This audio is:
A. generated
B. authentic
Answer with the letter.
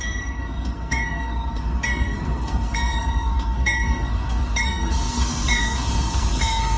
A